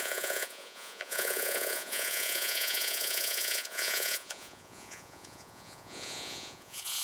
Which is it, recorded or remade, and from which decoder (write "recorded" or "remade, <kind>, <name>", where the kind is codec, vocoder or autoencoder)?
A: remade, vocoder, Vocos